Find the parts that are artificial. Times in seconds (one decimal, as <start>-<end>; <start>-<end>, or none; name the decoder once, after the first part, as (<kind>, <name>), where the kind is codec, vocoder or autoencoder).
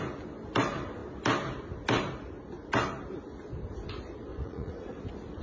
4.3-5.0 (vocoder, Vocos)